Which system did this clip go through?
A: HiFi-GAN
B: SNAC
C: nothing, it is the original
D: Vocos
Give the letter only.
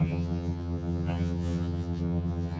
A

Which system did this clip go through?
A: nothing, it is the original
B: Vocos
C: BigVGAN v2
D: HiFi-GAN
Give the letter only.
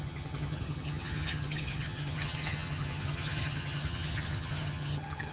D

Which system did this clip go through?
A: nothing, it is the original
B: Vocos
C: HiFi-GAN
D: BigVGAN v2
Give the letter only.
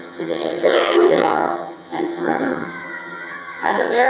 C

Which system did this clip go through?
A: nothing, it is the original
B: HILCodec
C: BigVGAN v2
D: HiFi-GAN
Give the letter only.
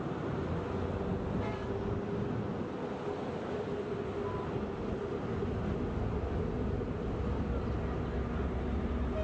A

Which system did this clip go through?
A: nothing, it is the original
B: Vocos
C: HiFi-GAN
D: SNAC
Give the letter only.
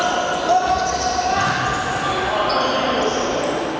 A